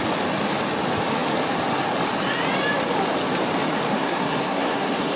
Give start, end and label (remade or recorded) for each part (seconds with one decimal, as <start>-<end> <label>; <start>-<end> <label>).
0.0-3.9 recorded; 3.9-5.2 remade